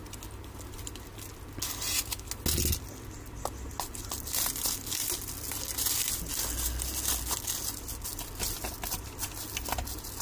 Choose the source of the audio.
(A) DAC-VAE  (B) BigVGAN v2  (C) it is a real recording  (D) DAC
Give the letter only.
C